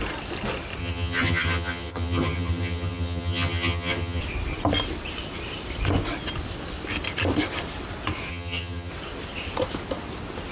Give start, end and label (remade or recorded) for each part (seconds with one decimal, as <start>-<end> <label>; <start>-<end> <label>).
0.0-0.8 recorded; 0.8-4.2 remade; 4.2-8.3 recorded; 8.3-8.9 remade; 8.9-10.5 recorded